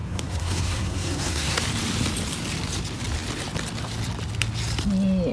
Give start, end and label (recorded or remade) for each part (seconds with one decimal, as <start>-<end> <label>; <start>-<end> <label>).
0.0-1.6 remade; 1.6-5.3 recorded